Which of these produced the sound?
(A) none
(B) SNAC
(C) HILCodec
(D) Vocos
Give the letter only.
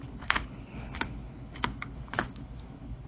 C